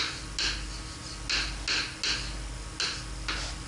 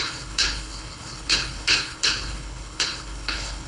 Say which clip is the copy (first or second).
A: second